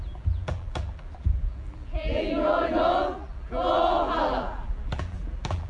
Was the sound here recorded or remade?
remade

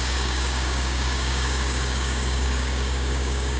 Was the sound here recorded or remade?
remade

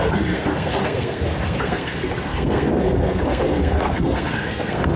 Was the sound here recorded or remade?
remade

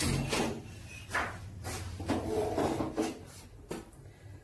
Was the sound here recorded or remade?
recorded